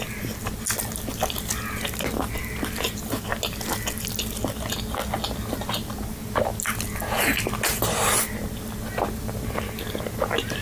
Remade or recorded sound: recorded